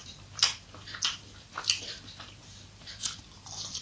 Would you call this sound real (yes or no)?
yes